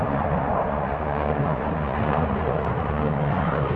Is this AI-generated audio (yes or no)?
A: yes